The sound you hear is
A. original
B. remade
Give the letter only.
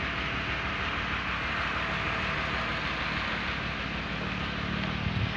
A